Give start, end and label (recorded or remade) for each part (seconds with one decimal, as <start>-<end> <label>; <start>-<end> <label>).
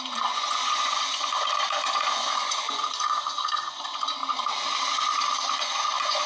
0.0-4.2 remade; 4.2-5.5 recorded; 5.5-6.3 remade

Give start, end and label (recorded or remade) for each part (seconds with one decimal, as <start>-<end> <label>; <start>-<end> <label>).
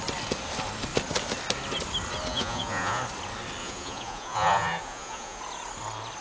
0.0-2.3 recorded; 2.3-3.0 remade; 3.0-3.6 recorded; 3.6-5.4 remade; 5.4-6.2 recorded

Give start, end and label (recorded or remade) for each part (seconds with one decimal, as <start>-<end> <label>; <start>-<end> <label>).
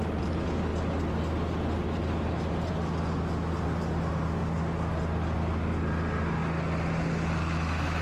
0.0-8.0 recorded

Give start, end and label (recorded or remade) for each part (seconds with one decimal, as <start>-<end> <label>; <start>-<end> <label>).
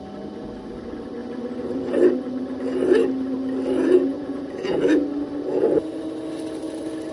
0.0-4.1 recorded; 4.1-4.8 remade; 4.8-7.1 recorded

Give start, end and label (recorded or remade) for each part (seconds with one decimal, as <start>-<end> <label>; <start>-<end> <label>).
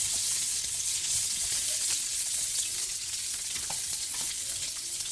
0.0-5.1 remade